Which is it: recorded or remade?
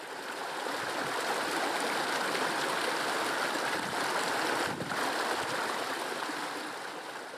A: recorded